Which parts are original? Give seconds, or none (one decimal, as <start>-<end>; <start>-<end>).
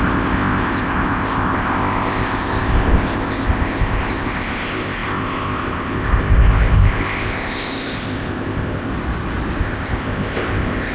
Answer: 8.9-9.6